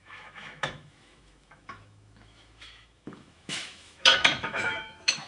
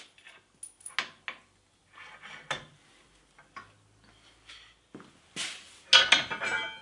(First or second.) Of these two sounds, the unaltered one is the second